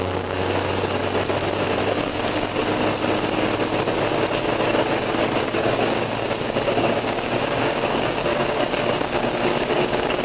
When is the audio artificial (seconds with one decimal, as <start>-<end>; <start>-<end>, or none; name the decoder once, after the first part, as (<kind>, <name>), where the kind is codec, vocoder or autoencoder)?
0.0-0.4 (codec, DAC); 1.9-2.6; 5.4-10.2